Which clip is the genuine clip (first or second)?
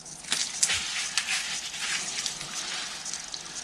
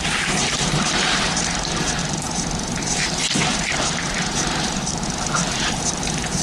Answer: first